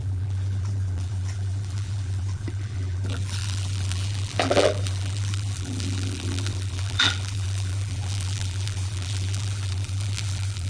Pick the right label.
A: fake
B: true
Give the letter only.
A